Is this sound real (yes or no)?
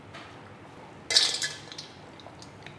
yes